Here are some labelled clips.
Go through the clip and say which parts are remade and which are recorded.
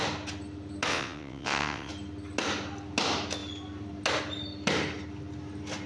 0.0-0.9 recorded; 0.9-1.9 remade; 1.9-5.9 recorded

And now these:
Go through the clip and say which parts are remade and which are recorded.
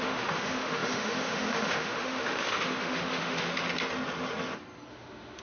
0.0-3.5 remade; 3.5-4.9 recorded; 4.9-5.4 remade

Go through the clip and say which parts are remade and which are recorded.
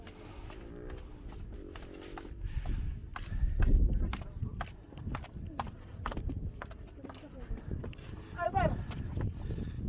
0.0-9.9 recorded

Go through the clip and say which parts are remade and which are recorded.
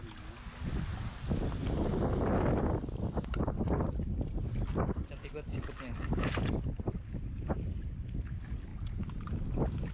0.0-1.6 recorded; 1.6-6.3 remade; 6.3-8.7 recorded; 8.7-9.3 remade; 9.3-9.9 recorded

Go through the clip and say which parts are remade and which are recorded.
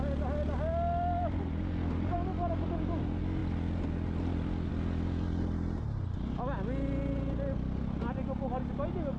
0.0-9.2 recorded